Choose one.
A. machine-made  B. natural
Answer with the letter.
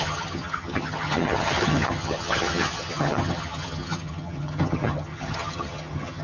A